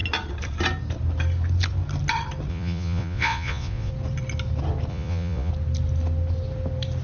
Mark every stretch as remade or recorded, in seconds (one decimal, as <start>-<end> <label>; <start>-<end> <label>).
0.0-2.5 recorded; 2.5-3.9 remade; 3.9-4.9 recorded; 4.9-5.5 remade; 5.5-7.0 recorded